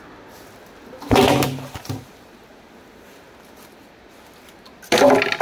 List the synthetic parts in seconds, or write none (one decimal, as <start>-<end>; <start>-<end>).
none